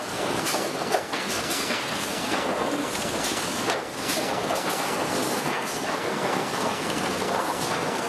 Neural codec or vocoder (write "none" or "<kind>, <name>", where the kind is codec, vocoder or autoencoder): codec, SNAC